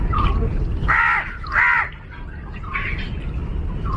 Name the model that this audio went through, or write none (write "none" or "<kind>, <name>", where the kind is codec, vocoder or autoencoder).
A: none